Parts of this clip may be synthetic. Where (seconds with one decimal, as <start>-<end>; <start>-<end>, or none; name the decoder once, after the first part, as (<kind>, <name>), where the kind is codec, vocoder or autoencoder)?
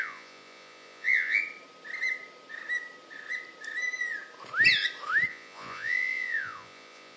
0.0-1.4 (vocoder, Vocos); 5.3-7.2